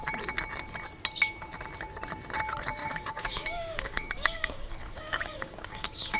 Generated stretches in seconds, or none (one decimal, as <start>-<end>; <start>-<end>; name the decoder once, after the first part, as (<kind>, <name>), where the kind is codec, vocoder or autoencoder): 2.8-6.2 (codec, DAC)